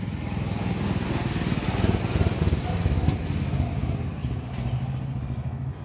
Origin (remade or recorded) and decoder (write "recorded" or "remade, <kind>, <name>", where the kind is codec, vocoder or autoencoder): recorded